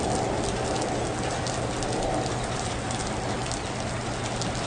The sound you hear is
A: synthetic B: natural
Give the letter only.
B